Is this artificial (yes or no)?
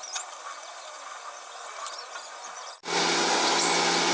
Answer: no